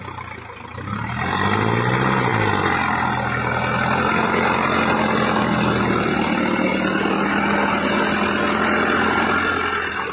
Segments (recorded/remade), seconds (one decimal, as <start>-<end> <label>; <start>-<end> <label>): 0.0-10.1 recorded